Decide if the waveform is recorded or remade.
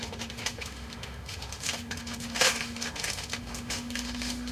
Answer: remade